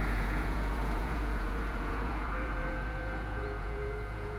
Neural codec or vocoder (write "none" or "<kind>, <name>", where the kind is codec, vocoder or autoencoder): vocoder, Vocos